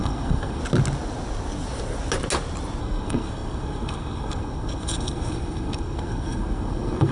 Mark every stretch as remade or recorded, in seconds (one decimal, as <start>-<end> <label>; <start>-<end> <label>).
0.0-0.6 remade; 0.6-2.8 recorded; 2.8-7.1 remade